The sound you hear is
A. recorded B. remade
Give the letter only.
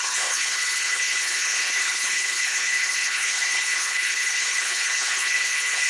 B